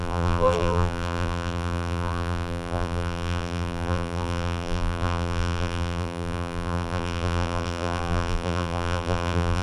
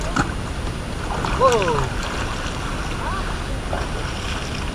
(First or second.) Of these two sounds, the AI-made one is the first